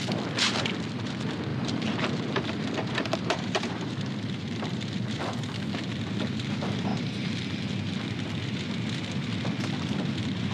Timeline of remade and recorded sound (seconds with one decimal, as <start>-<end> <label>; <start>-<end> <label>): 0.0-1.5 recorded; 1.5-5.2 remade; 5.2-10.5 recorded